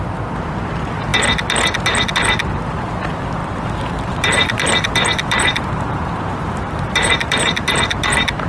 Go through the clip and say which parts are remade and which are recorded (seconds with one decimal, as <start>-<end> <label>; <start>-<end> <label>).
0.0-3.4 recorded; 3.4-8.5 remade